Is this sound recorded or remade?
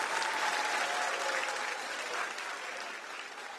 recorded